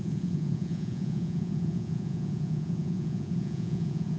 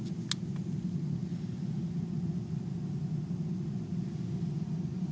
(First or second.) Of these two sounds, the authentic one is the second